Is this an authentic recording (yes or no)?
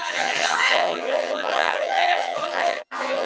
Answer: no